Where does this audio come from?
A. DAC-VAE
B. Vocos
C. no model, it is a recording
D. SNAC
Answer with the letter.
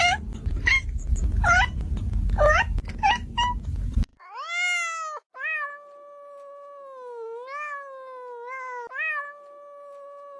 C